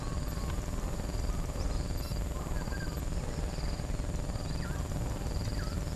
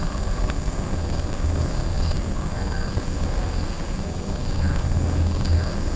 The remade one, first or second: second